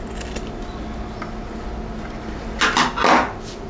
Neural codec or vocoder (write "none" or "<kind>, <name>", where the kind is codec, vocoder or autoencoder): none